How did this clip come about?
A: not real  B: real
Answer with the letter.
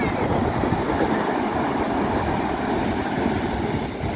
B